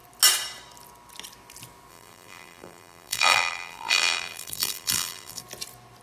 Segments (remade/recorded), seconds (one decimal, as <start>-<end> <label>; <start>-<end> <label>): 0.0-1.9 recorded; 1.9-5.4 remade; 5.4-6.0 recorded